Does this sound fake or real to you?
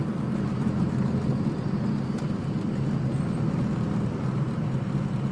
real